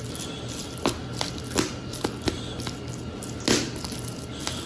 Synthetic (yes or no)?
no